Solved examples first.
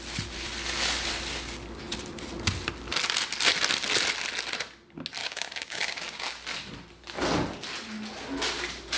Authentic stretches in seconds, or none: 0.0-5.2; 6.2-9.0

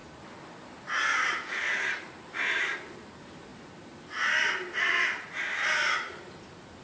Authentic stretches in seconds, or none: 0.0-6.8

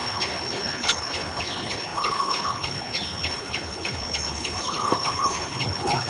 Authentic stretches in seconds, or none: none